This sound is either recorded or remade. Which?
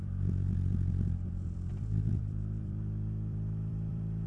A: remade